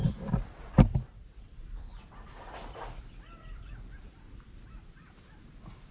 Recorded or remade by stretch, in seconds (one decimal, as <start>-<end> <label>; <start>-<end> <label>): 0.0-3.0 remade; 3.0-5.9 recorded

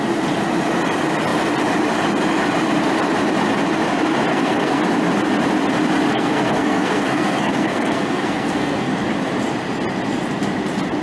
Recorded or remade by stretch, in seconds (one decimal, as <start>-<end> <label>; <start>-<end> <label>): 0.0-4.3 recorded; 4.3-4.8 remade; 4.8-6.1 recorded; 6.1-8.9 remade; 8.9-11.0 recorded